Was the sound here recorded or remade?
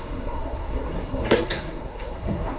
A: remade